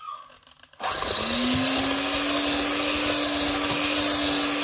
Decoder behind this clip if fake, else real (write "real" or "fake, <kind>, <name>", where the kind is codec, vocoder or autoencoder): real